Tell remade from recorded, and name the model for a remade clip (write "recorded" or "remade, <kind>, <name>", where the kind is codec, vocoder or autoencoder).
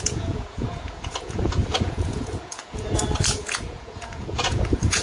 remade, vocoder, Vocos